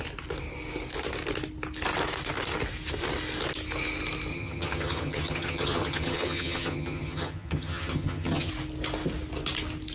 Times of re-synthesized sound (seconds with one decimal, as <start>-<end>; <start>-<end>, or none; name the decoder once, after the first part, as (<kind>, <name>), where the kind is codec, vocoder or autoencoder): 4.3-8.5 (vocoder, HiFi-GAN)